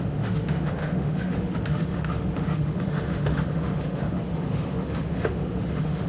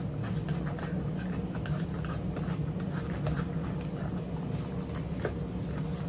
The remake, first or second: first